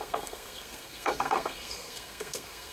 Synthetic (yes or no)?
yes